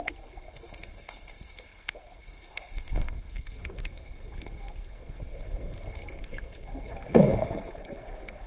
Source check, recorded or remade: remade